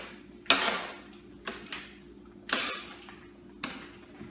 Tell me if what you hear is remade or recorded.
recorded